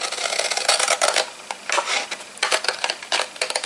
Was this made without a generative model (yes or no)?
yes